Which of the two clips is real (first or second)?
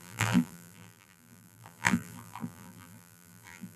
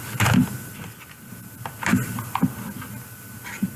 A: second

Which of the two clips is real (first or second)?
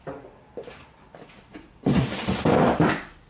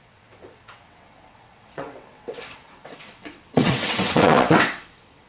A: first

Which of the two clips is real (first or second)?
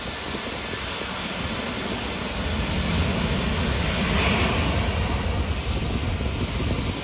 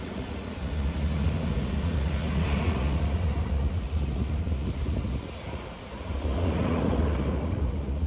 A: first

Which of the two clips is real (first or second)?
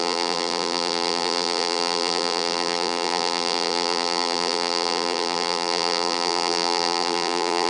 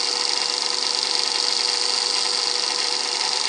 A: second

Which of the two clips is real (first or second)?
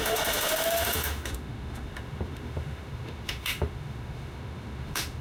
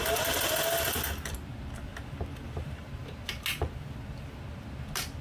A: second